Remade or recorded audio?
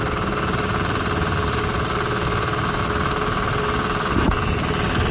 recorded